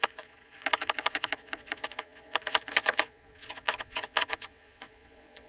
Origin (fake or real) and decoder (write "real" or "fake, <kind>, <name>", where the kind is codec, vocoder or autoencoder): fake, vocoder, Vocos